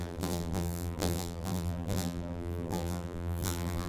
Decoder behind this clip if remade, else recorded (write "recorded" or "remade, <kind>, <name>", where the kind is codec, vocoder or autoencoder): remade, vocoder, BigVGAN v2